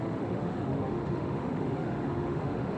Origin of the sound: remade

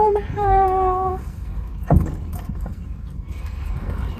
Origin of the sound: remade